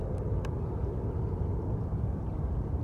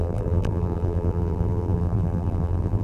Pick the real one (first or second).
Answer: first